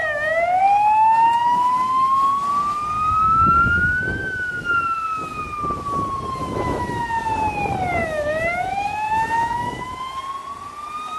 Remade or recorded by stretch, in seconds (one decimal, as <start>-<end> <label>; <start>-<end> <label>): 0.0-0.6 remade; 0.6-3.2 recorded; 3.2-4.5 remade; 4.5-6.4 recorded; 6.4-7.0 remade; 7.0-8.0 recorded; 8.0-10.2 remade; 10.2-11.2 recorded